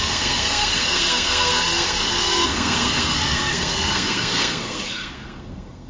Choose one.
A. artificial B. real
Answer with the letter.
A